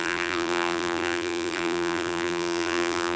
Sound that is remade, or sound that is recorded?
remade